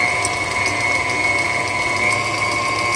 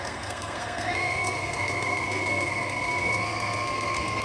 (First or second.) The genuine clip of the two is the first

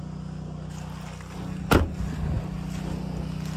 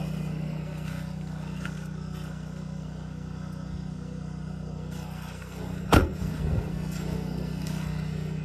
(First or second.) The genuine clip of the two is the first